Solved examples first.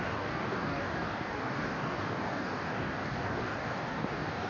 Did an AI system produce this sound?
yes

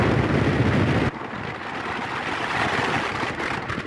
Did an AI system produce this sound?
no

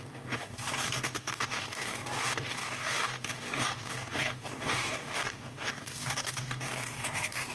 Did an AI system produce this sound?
yes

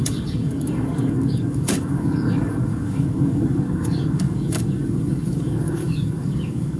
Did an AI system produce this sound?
yes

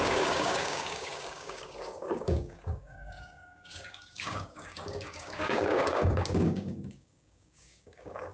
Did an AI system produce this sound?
yes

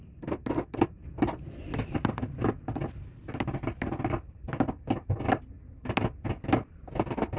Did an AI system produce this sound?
no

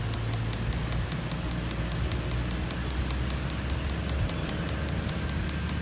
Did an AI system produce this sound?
no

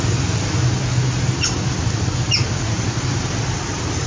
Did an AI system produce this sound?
no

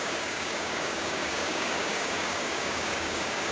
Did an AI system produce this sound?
yes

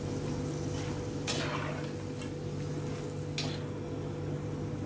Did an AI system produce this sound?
no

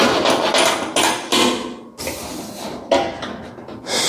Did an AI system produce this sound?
no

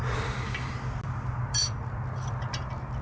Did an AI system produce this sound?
no